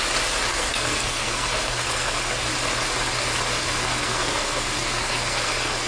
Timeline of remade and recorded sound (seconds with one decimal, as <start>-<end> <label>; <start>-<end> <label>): 0.0-0.5 recorded; 0.5-2.2 remade; 2.2-3.5 recorded; 3.5-5.9 remade